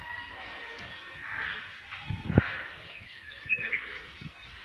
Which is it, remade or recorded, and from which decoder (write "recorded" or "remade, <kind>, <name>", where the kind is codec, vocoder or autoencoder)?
remade, codec, SNAC